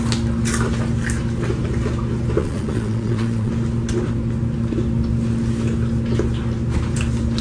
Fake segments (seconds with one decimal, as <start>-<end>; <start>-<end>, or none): 2.4-3.5